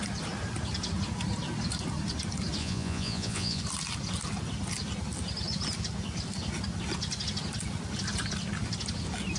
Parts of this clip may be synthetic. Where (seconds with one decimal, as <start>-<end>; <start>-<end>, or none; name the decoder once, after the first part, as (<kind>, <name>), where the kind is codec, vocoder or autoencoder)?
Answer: 2.6-3.6 (vocoder, Vocos)